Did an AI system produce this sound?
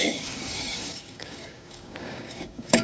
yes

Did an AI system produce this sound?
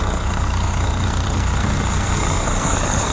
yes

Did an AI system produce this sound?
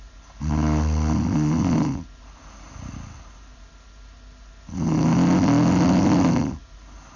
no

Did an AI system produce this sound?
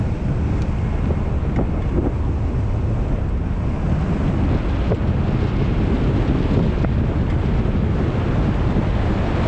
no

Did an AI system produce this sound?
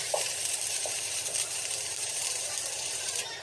yes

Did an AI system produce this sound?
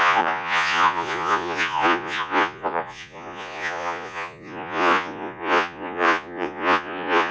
yes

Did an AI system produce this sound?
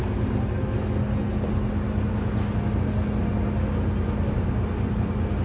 no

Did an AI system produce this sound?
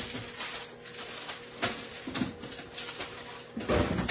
no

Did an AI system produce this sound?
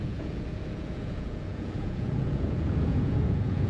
yes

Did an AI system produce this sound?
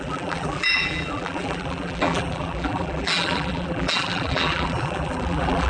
yes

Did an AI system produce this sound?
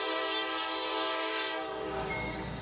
yes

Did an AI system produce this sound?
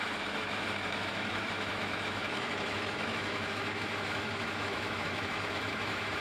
yes